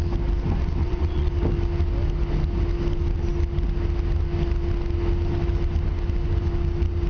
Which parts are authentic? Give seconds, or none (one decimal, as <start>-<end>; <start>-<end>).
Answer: 0.0-0.8; 1.3-7.1